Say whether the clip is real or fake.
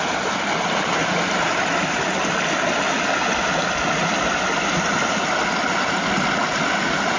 real